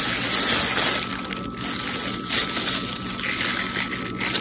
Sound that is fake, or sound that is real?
real